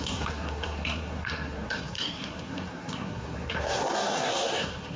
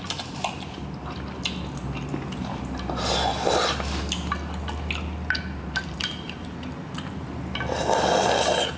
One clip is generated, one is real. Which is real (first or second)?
second